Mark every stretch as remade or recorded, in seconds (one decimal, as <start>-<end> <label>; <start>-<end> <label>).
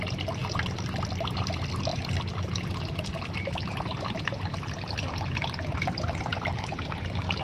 0.0-7.4 recorded